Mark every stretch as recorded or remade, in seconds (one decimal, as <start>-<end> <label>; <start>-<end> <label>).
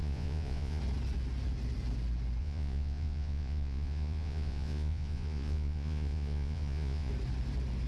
0.0-0.8 remade; 0.8-2.4 recorded; 2.4-7.1 remade; 7.1-7.9 recorded